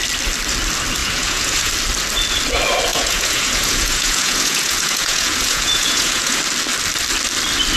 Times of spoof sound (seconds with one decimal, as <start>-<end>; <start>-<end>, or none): 1.0-1.7; 2.9-6.4